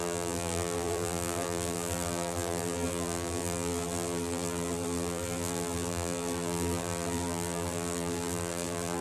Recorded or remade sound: remade